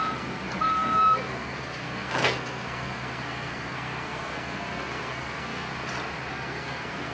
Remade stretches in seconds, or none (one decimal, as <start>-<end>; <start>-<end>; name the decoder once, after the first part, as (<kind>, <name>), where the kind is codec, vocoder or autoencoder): 0.0-5.7 (codec, SNAC); 6.3-7.1